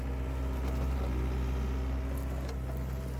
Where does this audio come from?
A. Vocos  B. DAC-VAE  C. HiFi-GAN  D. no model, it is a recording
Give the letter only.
D